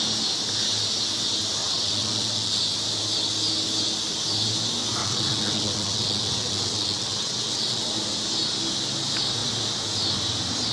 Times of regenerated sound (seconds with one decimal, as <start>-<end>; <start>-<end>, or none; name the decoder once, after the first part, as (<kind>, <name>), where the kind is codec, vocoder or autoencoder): 1.6-2.6 (vocoder, WaveNeXt); 5.0-7.9